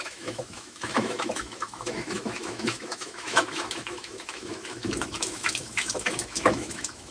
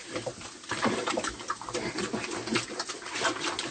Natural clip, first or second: second